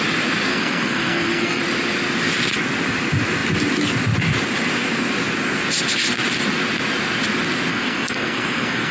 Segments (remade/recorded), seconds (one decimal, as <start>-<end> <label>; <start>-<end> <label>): 0.0-0.5 recorded; 0.5-1.6 remade; 1.6-7.7 recorded; 7.7-8.9 remade